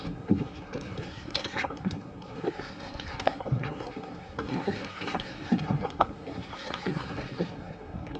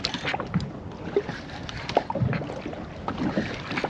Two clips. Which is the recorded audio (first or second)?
second